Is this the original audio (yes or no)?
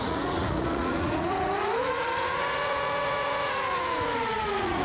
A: no